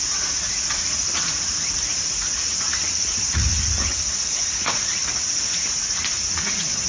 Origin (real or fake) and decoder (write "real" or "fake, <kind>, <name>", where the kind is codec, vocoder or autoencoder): fake, vocoder, Vocos